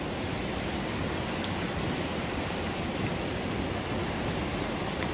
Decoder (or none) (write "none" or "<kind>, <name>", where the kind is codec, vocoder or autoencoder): none